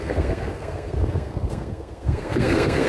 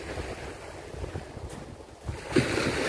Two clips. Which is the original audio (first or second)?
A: second